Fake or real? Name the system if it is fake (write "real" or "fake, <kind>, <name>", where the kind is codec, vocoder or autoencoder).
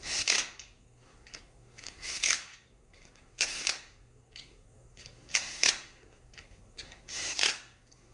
fake, codec, SNAC